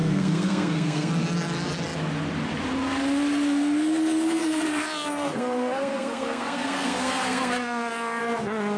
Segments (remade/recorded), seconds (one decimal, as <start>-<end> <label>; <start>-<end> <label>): 0.0-1.1 remade; 1.1-4.4 recorded; 4.4-8.2 remade; 8.2-8.8 recorded